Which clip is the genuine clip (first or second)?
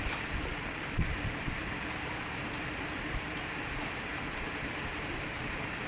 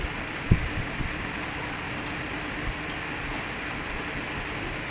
second